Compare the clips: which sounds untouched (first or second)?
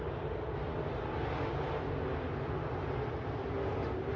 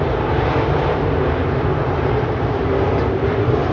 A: first